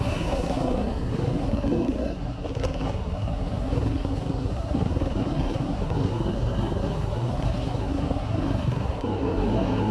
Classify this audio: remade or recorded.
remade